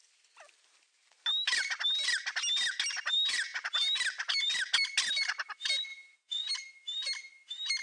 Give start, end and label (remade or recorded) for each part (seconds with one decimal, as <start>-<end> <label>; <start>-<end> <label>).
0.0-5.9 recorded; 5.9-6.5 remade; 6.5-7.8 recorded